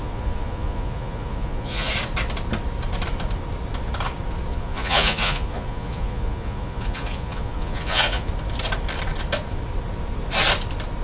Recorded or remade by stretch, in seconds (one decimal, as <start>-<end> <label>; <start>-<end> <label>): 0.0-1.9 remade; 1.9-4.5 recorded; 4.5-8.3 remade; 8.3-11.0 recorded